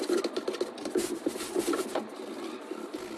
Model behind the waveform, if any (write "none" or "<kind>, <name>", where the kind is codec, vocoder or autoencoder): none